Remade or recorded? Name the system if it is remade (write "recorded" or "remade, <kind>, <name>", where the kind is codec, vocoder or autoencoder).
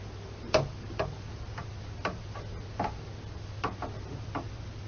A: recorded